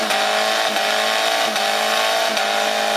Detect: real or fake real